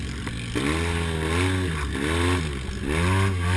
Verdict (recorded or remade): recorded